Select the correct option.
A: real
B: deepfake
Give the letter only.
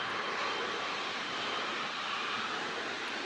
B